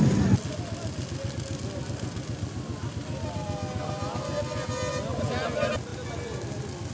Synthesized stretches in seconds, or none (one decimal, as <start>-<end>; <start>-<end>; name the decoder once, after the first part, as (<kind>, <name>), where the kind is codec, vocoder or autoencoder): none